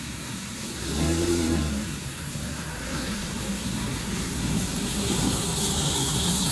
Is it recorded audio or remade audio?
remade